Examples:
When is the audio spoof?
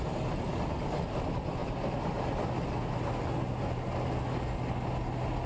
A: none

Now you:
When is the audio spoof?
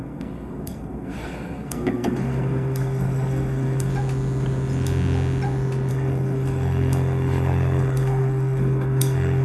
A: 0.0-3.9; 5.9-9.4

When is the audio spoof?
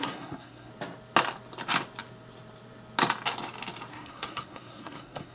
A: 0.0-0.7; 3.9-5.3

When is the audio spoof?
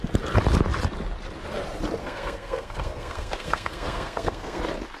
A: 2.0-4.6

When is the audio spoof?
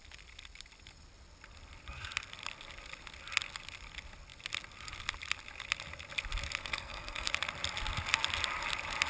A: 6.6-7.3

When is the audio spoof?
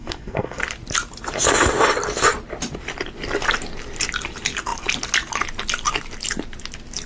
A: 0.0-0.6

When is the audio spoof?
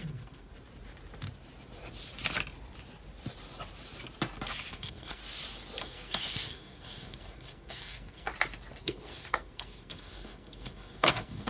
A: 0.0-0.5; 4.7-5.2; 5.8-8.3; 8.8-11.5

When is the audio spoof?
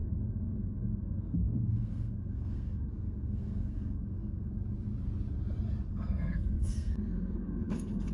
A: 0.0-4.5; 5.9-8.1